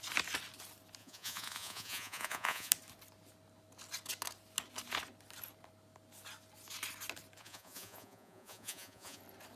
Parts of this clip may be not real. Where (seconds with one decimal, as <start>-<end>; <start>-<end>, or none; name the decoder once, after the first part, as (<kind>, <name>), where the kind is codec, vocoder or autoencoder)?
1.0-2.7 (vocoder, Vocos); 7.4-9.2